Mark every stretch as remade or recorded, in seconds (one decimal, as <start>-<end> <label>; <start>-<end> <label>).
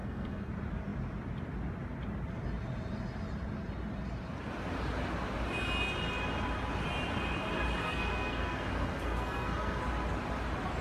0.0-0.5 remade; 0.5-7.8 recorded; 7.8-9.8 remade; 9.8-10.8 recorded